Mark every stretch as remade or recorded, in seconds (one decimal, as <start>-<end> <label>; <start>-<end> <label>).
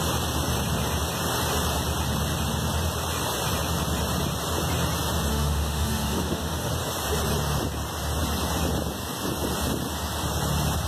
0.0-5.3 recorded; 5.3-6.7 remade; 6.7-10.9 recorded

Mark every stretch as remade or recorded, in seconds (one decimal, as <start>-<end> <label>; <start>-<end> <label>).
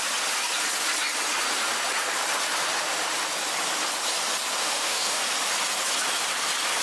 0.0-4.6 recorded; 4.6-5.2 remade; 5.2-6.8 recorded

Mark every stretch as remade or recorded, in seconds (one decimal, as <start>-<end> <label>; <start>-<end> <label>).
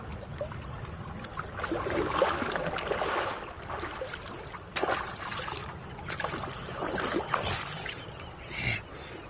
0.0-9.3 recorded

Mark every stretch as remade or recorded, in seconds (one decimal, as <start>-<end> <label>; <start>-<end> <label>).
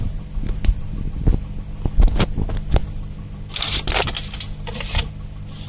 0.0-5.7 recorded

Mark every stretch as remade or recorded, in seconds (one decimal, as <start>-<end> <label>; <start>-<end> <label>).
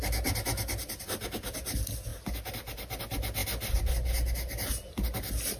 0.0-5.6 recorded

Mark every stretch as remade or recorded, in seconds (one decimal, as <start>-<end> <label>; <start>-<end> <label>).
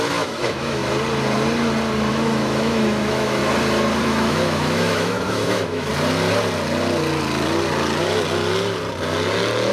0.0-0.8 remade; 0.8-2.1 recorded; 2.1-3.4 remade; 3.4-4.0 recorded; 4.0-5.9 remade; 5.9-9.7 recorded